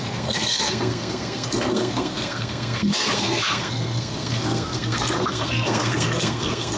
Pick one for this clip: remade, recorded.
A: remade